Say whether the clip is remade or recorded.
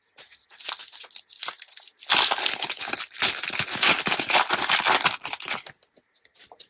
recorded